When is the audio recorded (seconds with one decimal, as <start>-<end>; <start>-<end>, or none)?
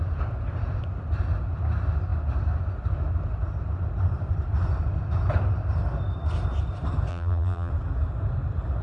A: 0.0-7.1; 7.7-8.8